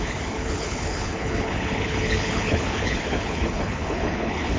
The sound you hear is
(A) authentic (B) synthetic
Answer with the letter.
B